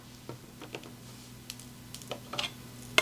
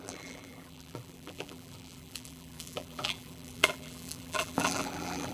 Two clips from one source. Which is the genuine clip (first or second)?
first